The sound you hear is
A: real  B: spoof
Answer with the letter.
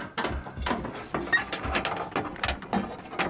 A